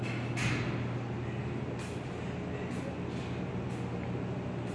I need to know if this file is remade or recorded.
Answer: recorded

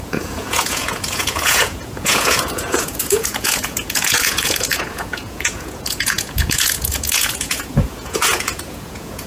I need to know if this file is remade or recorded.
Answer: remade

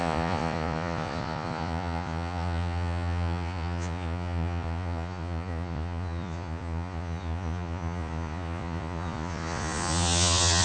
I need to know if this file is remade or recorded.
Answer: remade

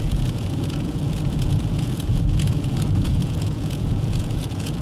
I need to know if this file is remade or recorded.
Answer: remade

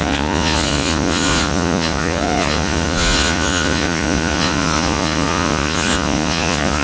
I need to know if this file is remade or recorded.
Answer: remade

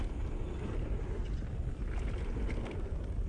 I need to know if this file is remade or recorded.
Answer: recorded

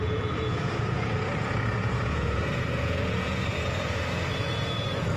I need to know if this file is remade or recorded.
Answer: remade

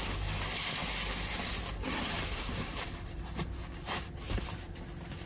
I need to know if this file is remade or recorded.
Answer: recorded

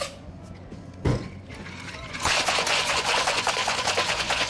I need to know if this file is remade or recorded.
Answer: remade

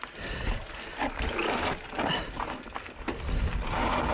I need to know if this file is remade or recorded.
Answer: recorded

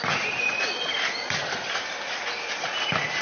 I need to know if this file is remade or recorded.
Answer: recorded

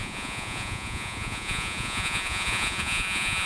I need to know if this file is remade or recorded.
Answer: remade